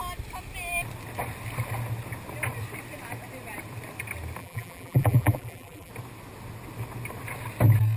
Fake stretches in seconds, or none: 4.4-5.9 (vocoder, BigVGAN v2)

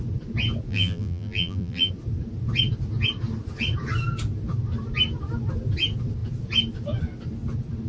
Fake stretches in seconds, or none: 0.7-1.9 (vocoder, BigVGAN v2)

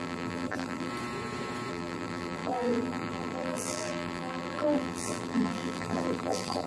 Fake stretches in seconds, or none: 0.0-0.9 (vocoder, BigVGAN v2); 1.7-6.7

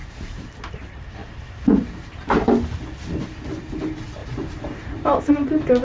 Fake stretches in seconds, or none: 0.0-0.7 (vocoder, BigVGAN v2); 1.2-2.5; 4.2-5.3

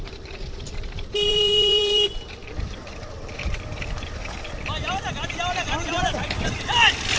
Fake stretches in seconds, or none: 0.0-2.4 (vocoder, BigVGAN v2); 5.4-7.2